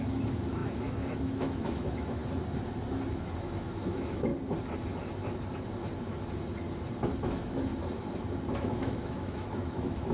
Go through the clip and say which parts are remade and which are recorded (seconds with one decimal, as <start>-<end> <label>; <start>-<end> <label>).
0.0-2.2 remade; 2.2-3.1 recorded; 3.1-4.3 remade; 4.3-7.2 recorded; 7.2-7.7 remade; 7.7-8.5 recorded; 8.5-10.1 remade